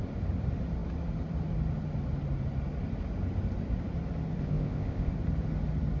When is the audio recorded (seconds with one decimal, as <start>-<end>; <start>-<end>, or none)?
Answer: 0.0-4.4; 5.1-6.0